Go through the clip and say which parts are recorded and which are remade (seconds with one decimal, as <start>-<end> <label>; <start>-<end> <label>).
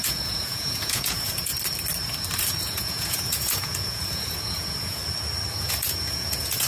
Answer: 0.0-1.5 remade; 1.5-2.6 recorded; 2.6-5.0 remade; 5.0-5.5 recorded; 5.5-6.7 remade